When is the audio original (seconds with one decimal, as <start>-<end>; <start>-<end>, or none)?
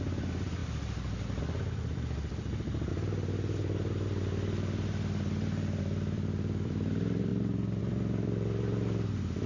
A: 0.6-1.4; 2.9-5.8; 7.3-7.8